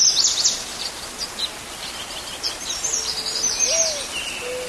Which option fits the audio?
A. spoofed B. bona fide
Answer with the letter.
B